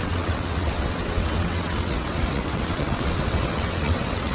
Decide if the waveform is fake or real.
fake